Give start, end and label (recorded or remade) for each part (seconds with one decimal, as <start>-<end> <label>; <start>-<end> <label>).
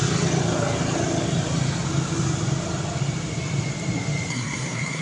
0.0-4.3 recorded; 4.3-5.0 remade